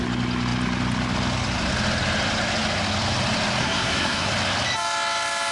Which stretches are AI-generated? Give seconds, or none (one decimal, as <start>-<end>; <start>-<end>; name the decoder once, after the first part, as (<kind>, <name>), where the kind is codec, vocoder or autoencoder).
3.6-4.3 (codec, SNAC)